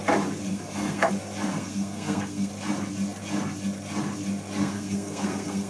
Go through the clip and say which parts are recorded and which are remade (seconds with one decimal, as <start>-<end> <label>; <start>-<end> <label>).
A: 0.0-0.5 recorded; 0.5-1.1 remade; 1.1-1.5 recorded; 1.5-2.5 remade; 2.5-4.6 recorded; 4.6-5.7 remade